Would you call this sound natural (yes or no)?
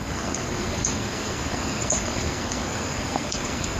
no